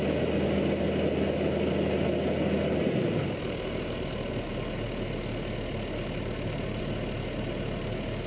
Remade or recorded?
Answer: recorded